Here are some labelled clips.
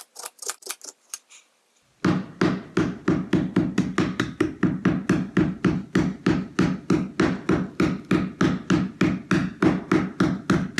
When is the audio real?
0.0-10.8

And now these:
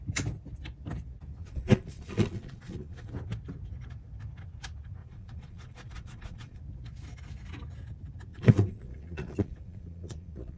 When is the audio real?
0.0-1.4; 3.1-5.0; 6.6-8.3

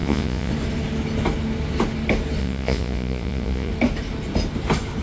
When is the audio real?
0.5-2.4; 3.7-5.0

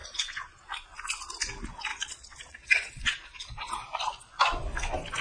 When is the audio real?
0.7-1.9; 3.7-5.2

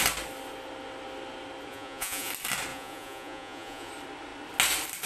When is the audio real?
0.0-1.7; 2.3-2.7; 3.9-5.1

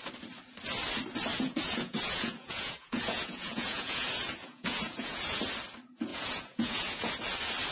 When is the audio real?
0.0-1.3; 5.4-6.1; 7.1-7.7

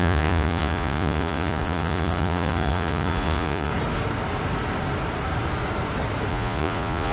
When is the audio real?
3.7-6.3